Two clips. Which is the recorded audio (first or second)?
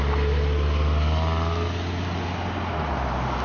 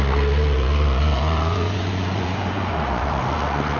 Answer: first